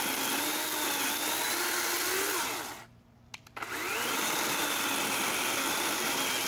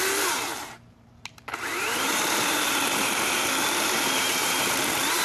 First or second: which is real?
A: first